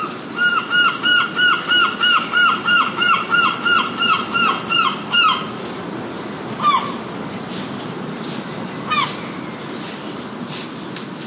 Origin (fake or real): real